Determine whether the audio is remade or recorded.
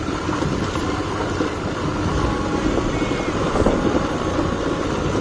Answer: recorded